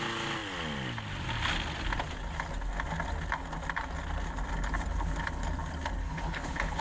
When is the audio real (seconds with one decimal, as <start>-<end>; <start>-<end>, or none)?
0.0-6.0

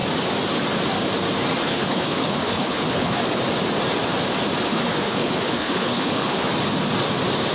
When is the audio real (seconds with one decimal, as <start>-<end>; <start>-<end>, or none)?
0.0-1.6; 3.2-4.7; 6.5-7.5

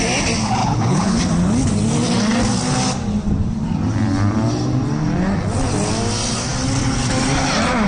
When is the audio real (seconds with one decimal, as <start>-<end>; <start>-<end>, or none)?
0.0-0.6; 1.2-7.9